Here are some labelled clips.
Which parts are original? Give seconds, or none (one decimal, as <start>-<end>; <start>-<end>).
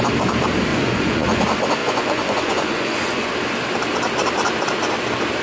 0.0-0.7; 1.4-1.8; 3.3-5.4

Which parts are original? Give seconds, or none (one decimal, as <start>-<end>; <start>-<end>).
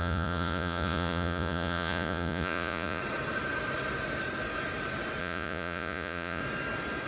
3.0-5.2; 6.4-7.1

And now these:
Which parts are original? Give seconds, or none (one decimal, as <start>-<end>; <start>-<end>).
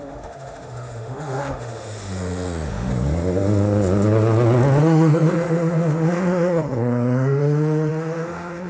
2.9-4.8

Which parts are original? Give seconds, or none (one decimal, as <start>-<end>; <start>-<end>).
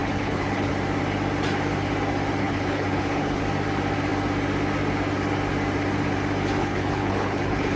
0.7-2.4; 3.4-6.6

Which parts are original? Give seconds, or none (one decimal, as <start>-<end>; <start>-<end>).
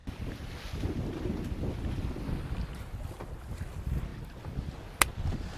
0.0-5.6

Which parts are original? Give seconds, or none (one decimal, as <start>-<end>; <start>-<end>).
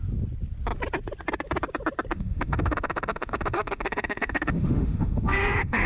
0.0-2.1